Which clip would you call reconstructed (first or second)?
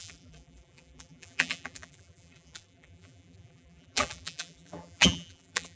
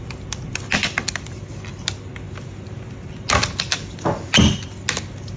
first